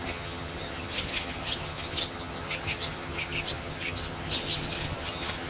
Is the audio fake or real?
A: fake